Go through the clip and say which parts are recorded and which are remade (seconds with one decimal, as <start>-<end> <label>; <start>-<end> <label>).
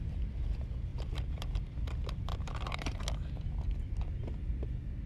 0.0-0.9 recorded; 0.9-1.6 remade; 1.6-2.3 recorded; 2.3-3.0 remade; 3.0-5.1 recorded